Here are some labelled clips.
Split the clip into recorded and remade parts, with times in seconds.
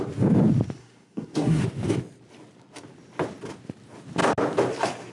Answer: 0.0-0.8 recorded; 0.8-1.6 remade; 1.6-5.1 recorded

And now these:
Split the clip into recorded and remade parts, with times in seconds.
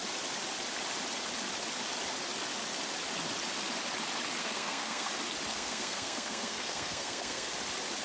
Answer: 0.0-4.4 recorded; 4.4-5.1 remade; 5.1-5.5 recorded; 5.5-7.5 remade; 7.5-8.0 recorded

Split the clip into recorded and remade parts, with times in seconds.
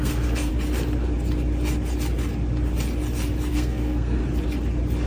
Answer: 0.0-0.5 remade; 0.5-3.5 recorded; 3.5-4.2 remade; 4.2-5.1 recorded